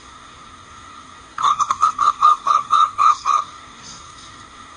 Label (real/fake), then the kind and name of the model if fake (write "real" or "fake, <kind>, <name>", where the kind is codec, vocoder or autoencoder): fake, codec, SNAC